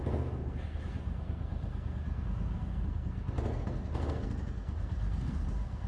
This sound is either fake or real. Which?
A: fake